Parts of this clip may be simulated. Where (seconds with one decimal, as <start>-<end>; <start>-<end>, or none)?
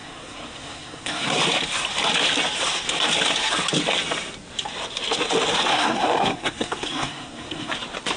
0.0-1.4; 5.7-7.7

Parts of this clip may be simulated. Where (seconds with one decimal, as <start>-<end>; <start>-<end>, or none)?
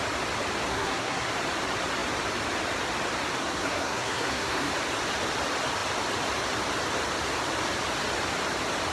0.7-1.3; 3.4-4.7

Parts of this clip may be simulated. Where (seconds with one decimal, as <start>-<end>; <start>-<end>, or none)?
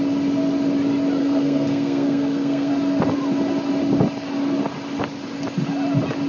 1.2-2.7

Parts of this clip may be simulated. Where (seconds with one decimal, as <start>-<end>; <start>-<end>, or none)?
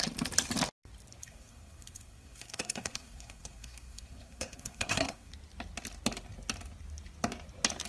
1.2-5.3